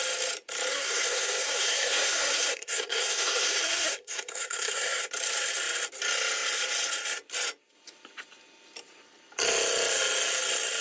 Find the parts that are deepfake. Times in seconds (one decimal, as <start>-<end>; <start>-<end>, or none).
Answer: 0.7-5.1

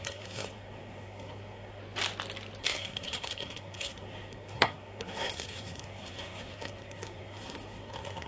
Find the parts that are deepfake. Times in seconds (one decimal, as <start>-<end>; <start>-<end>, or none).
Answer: 0.0-1.8; 2.6-8.3

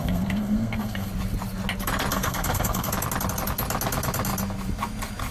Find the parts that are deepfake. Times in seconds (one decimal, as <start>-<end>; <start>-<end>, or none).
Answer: 0.0-1.1; 2.1-2.9

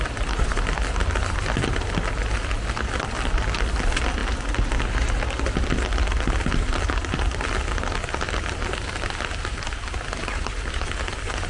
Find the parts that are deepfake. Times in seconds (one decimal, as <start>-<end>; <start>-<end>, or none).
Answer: none

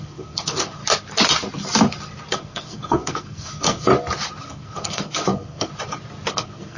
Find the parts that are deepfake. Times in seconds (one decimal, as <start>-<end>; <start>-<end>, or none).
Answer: 0.0-0.8; 2.3-3.9; 4.4-5.7; 6.3-6.8